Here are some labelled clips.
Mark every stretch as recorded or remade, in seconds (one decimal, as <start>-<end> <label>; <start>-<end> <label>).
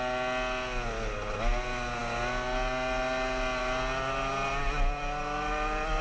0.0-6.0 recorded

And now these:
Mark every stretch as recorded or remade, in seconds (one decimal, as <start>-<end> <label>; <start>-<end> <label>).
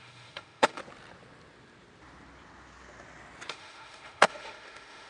0.0-0.8 remade; 0.8-3.5 recorded; 3.5-5.1 remade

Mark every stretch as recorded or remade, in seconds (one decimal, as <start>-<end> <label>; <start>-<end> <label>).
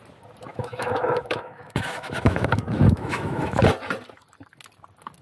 0.0-0.5 recorded; 0.5-3.6 remade; 3.6-5.2 recorded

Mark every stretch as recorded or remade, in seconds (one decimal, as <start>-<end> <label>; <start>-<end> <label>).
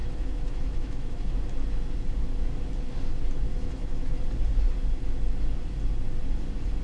0.0-1.3 remade; 1.3-3.5 recorded; 3.5-4.2 remade; 4.2-6.8 recorded